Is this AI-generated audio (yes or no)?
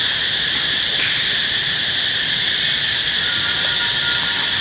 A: no